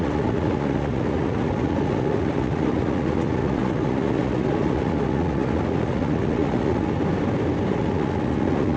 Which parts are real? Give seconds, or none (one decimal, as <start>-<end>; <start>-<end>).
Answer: 7.0-7.7